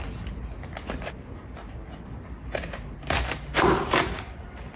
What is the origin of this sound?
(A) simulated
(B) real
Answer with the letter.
B